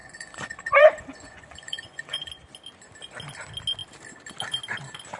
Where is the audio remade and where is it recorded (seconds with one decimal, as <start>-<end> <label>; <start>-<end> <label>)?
0.0-2.3 remade; 2.3-5.2 recorded